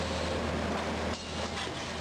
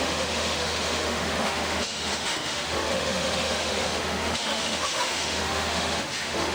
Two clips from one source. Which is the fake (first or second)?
second